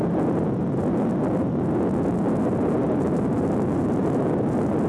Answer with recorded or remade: recorded